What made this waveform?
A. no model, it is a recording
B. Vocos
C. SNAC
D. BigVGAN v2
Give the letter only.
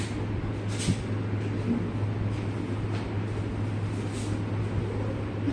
A